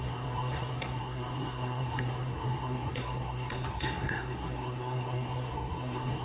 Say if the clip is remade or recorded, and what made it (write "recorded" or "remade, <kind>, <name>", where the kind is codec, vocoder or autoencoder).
remade, codec, SNAC